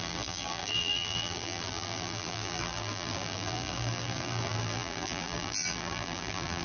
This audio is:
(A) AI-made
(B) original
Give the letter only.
A